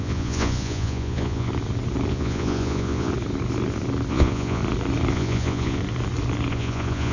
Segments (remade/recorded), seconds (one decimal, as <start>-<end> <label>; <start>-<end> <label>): 0.0-1.5 remade; 1.5-2.1 recorded; 2.1-3.1 remade; 3.1-4.1 recorded; 4.1-4.6 remade; 4.6-5.1 recorded; 5.1-5.8 remade; 5.8-6.5 recorded; 6.5-7.1 remade